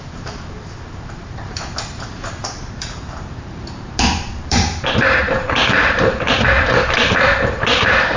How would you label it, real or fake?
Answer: fake